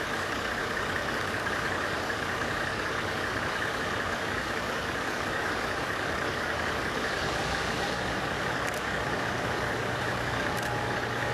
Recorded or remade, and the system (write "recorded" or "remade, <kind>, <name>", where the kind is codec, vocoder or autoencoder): remade, codec, DAC